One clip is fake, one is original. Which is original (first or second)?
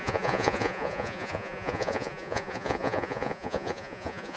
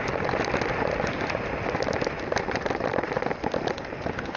second